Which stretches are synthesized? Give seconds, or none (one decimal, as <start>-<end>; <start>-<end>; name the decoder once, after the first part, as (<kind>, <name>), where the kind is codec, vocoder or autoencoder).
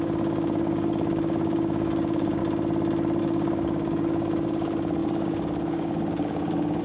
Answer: 0.0-2.4 (codec, DAC); 3.2-6.8